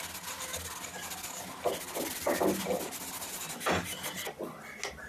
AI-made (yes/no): no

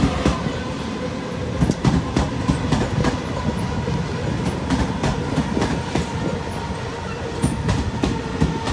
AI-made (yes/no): no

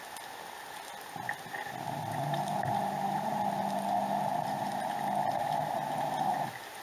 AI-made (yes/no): no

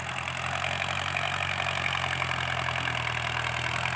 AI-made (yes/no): no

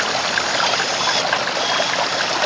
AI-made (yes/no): no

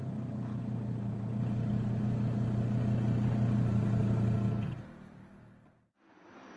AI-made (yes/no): no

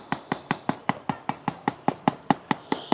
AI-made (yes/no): no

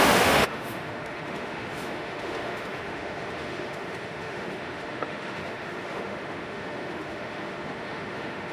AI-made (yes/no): yes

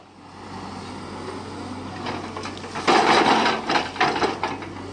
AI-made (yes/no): no